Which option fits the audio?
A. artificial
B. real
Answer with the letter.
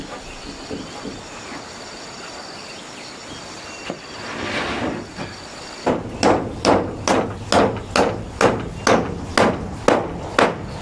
B